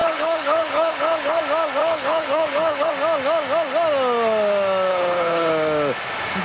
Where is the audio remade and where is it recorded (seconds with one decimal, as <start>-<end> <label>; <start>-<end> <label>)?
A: 0.0-1.4 remade; 1.4-1.8 recorded; 1.8-2.9 remade; 2.9-4.9 recorded; 4.9-5.5 remade; 5.5-6.4 recorded